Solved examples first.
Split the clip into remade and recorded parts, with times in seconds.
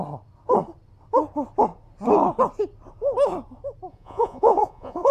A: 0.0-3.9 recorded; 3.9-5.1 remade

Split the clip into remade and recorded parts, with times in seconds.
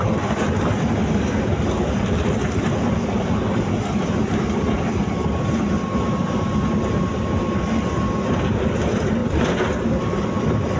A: 0.0-10.8 recorded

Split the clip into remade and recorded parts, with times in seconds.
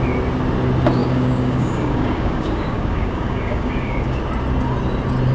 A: 0.0-1.0 recorded; 1.0-4.2 remade; 4.2-5.3 recorded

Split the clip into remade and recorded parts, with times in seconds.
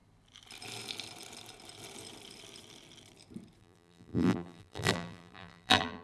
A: 0.0-3.6 recorded; 3.6-6.0 remade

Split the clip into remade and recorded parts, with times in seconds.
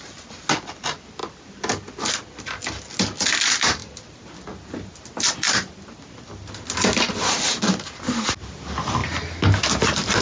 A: 0.0-10.2 recorded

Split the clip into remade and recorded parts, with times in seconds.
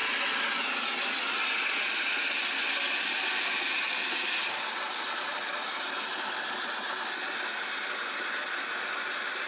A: 0.0-9.5 recorded